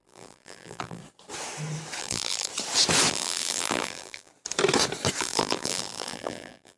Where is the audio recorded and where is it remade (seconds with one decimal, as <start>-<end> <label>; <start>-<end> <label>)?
0.0-1.0 remade; 1.0-2.0 recorded; 2.0-2.5 remade; 2.5-3.1 recorded; 3.1-4.3 remade; 4.3-5.2 recorded; 5.2-6.8 remade